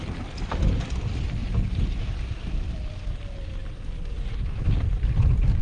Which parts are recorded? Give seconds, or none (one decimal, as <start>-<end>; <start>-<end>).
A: 0.0-1.4; 2.7-5.6